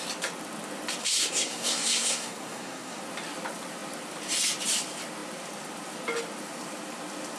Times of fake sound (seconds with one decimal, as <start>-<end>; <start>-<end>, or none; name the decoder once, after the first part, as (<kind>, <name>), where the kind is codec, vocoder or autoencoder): 1.0-3.0 (codec, SNAC)